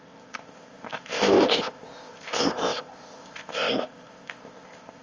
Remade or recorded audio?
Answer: remade